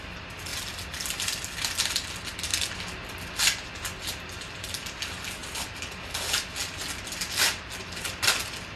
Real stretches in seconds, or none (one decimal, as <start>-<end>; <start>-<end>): 0.0-5.4; 6.1-8.8

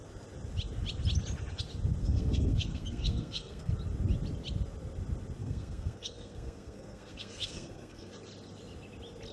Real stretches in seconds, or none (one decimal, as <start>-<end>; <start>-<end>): 0.0-2.0; 3.7-5.4; 8.1-9.3

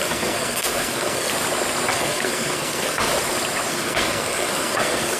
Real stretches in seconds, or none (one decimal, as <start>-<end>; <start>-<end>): 1.3-1.9; 3.1-3.7